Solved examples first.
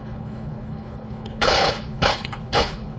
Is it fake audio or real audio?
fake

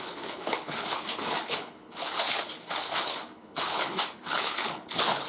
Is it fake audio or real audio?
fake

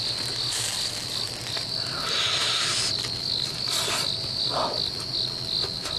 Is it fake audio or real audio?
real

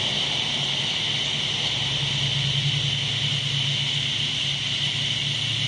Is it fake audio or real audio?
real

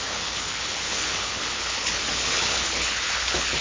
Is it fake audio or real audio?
fake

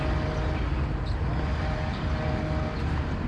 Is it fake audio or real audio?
real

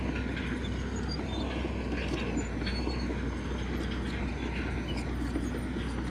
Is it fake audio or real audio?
real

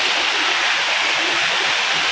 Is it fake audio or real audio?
real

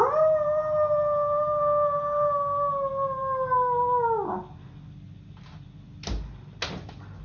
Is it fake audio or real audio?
real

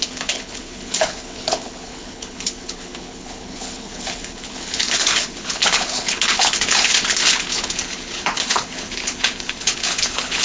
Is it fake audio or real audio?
fake